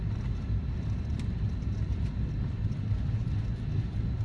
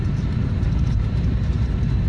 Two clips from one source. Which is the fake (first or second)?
second